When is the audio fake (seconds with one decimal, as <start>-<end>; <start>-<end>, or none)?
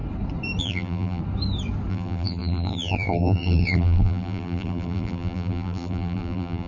0.6-1.2; 1.9-6.7